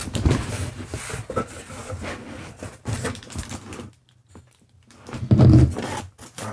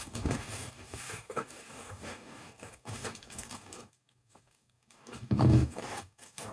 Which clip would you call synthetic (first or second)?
second